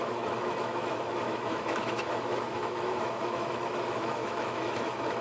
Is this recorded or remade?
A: remade